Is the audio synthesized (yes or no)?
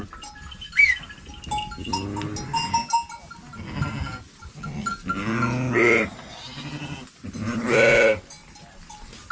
no